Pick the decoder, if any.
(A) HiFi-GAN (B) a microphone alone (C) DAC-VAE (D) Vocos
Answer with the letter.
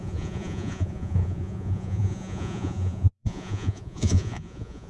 D